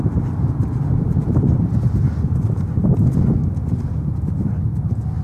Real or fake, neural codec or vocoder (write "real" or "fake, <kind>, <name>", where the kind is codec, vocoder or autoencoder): real